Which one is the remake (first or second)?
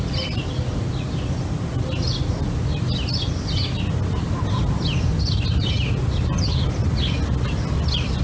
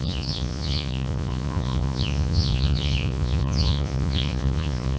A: second